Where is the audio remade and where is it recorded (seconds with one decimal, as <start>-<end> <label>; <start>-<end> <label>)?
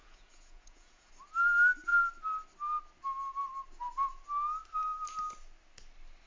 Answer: 0.0-1.1 remade; 1.1-6.3 recorded